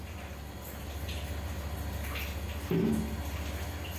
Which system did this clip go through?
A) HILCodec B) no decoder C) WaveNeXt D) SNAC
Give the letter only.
B